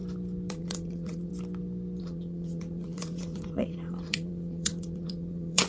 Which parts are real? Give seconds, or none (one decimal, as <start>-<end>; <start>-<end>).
0.0-0.5; 1.3-2.0